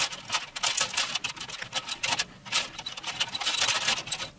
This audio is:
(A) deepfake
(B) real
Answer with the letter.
B